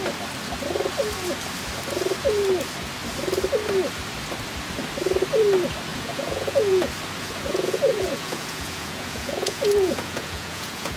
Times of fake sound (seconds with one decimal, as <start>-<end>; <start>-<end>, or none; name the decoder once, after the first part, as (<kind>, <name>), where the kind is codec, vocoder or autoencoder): 5.9-6.9 (vocoder, Vocos); 7.5-11.0